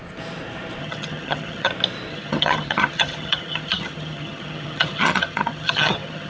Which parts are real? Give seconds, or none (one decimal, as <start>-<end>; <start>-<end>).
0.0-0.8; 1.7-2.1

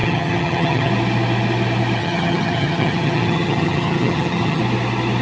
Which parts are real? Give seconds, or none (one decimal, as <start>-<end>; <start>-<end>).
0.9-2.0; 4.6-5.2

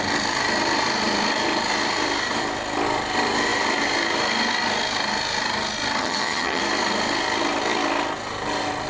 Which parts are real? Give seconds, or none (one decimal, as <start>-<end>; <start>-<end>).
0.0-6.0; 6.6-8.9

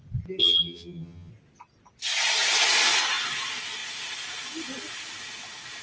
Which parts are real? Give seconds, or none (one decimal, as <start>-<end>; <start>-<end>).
0.0-0.4; 1.3-5.8